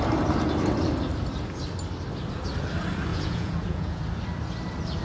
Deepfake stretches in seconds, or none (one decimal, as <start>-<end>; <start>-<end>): 3.1-4.0